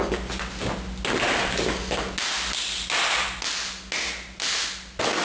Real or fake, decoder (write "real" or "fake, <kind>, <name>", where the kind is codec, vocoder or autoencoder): real